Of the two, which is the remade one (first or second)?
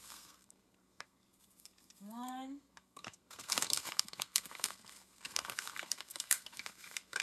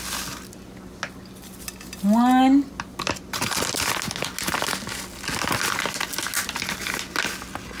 first